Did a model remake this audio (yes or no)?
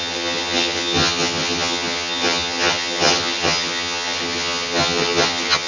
yes